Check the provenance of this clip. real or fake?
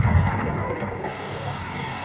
fake